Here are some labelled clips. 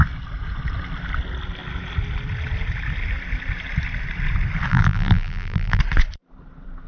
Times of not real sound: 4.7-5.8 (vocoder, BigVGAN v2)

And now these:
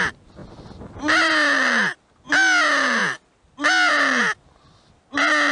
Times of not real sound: none

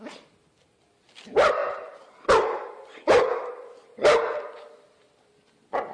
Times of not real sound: none